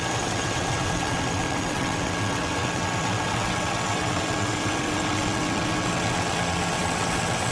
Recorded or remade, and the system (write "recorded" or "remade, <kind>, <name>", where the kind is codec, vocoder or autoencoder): remade, vocoder, WaveNeXt